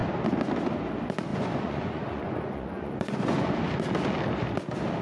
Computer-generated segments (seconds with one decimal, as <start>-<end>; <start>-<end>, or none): 1.3-3.5